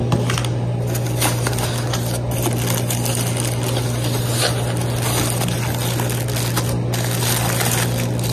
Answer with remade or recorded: recorded